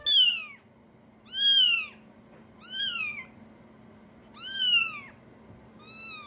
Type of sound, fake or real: real